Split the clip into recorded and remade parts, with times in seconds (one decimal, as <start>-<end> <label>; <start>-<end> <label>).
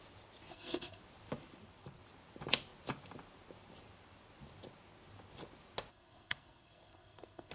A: 0.0-0.5 recorded; 0.5-1.0 remade; 1.0-5.9 recorded; 5.9-7.5 remade